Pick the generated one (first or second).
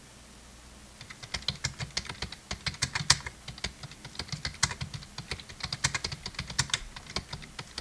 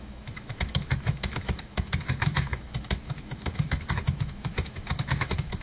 second